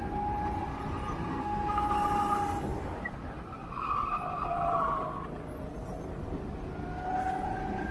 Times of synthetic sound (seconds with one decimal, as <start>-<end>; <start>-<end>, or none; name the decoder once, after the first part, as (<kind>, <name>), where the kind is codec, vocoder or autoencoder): 1.3-1.9 (codec, SNAC)